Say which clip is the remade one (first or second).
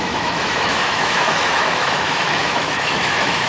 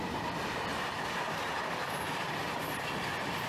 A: first